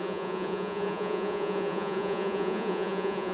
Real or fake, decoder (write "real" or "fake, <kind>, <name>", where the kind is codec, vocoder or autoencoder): fake, vocoder, Vocos